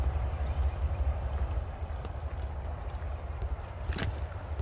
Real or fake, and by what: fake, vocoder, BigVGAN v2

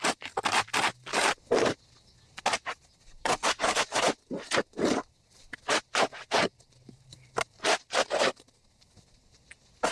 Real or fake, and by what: real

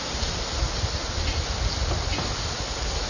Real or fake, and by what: real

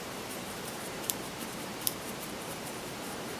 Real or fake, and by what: fake, vocoder, BigVGAN v2